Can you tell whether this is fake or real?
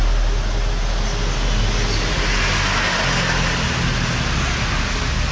real